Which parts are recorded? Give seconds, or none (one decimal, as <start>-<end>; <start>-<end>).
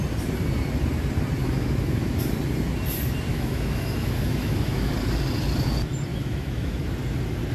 0.0-1.4; 2.2-3.3; 4.9-6.1; 6.9-7.5